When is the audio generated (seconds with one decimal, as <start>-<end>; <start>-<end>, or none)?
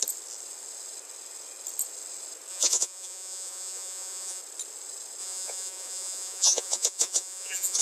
2.5-4.4; 5.2-7.8